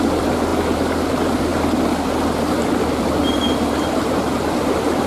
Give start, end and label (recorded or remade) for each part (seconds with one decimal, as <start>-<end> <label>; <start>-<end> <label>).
0.0-0.5 remade; 0.5-1.1 recorded; 1.1-1.5 remade; 1.5-2.8 recorded; 2.8-5.1 remade